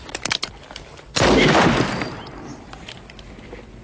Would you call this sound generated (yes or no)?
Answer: no